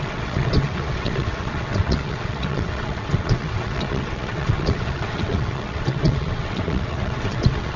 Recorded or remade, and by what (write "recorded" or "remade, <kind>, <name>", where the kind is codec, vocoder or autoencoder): remade, vocoder, WaveNeXt